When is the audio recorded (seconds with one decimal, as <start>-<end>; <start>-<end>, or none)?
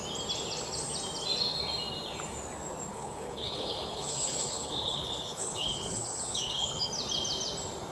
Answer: 0.0-2.9; 6.9-7.9